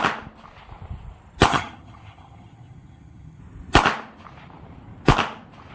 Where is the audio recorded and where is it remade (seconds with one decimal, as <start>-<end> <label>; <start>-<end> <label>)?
0.0-1.5 recorded; 1.5-3.4 remade; 3.4-5.7 recorded